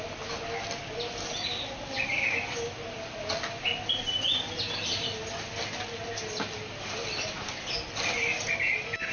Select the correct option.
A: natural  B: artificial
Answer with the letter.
A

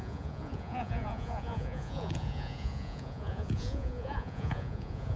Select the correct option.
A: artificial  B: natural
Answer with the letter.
A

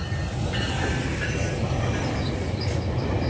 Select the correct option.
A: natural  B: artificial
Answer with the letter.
A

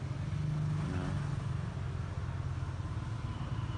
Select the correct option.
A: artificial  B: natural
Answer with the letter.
B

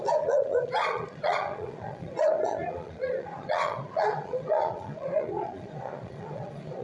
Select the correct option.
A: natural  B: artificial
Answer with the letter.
B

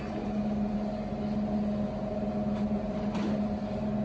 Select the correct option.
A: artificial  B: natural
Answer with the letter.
B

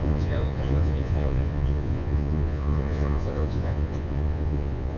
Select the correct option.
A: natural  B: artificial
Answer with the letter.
B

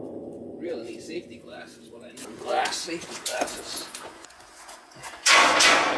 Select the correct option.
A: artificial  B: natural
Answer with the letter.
A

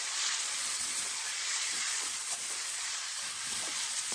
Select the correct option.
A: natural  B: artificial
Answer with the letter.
B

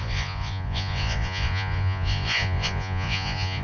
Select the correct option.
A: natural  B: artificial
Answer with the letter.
B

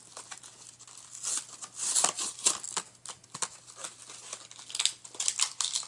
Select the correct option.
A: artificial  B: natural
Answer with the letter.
B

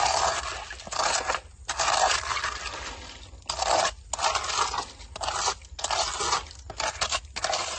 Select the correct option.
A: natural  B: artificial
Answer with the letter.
A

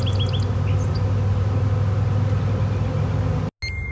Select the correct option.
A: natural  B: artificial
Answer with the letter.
A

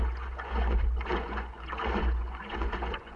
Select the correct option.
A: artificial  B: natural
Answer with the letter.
A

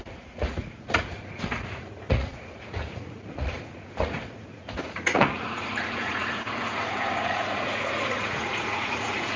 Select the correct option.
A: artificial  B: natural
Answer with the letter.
A